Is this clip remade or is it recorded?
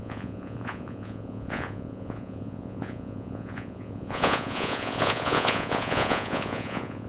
remade